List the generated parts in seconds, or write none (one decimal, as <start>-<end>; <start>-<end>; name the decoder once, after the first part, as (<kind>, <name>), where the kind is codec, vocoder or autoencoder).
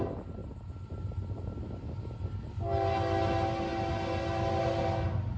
none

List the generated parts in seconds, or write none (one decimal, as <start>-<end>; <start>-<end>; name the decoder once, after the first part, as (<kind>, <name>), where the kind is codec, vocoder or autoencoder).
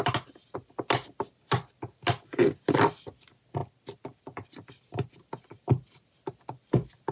none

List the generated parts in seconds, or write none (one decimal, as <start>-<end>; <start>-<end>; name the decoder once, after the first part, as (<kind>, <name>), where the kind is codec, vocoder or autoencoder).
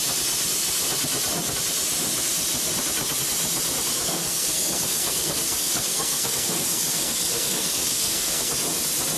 3.9-8.5 (codec, SNAC)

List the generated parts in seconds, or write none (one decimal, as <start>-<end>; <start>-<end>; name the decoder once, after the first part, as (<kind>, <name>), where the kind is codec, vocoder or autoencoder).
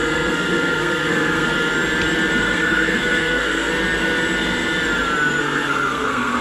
0.0-1.5 (codec, SNAC); 2.4-3.7; 5.4-6.4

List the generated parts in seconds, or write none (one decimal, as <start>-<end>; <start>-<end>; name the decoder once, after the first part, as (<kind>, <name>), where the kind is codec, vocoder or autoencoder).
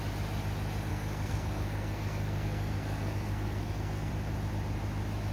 0.9-4.1 (codec, SNAC)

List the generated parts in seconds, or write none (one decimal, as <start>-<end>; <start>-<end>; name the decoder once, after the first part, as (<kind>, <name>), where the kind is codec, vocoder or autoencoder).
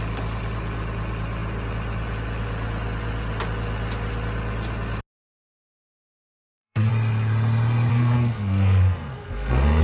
6.1-6.9 (codec, SNAC); 7.9-9.8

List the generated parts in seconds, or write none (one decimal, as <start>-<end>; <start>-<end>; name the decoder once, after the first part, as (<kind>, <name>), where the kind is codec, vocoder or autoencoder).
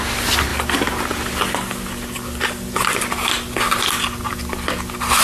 none